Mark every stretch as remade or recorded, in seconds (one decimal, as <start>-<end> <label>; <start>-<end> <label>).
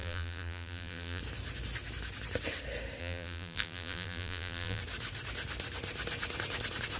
0.0-1.2 remade; 1.2-3.0 recorded; 3.0-4.8 remade; 4.8-7.0 recorded